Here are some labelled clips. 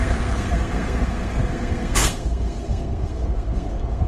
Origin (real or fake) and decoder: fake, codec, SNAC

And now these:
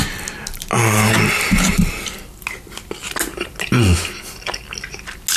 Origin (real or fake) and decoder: real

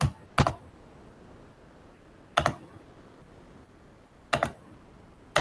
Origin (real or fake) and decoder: real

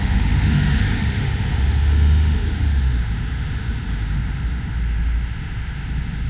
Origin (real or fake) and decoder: fake, autoencoder, DAC-VAE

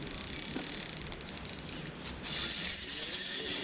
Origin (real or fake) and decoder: real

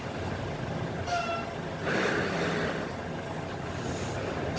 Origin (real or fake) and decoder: real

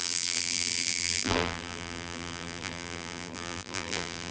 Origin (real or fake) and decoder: fake, vocoder, BigVGAN v2